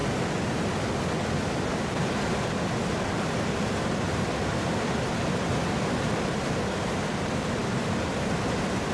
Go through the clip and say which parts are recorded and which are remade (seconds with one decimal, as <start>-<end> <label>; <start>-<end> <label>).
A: 0.0-8.9 recorded